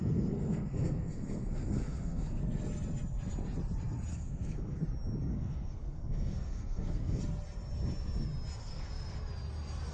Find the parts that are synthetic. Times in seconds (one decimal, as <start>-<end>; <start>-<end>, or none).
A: 0.0-2.4; 4.1-4.8; 5.3-7.2; 8.6-9.2